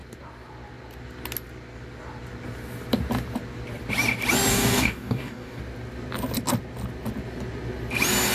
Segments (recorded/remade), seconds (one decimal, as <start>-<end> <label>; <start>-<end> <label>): 0.0-4.5 recorded; 4.5-5.6 remade; 5.6-8.3 recorded

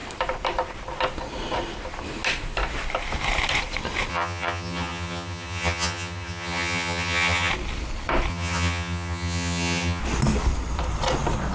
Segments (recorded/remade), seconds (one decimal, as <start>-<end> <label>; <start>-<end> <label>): 0.0-4.1 recorded; 4.1-7.5 remade; 7.5-8.3 recorded; 8.3-10.0 remade; 10.0-11.5 recorded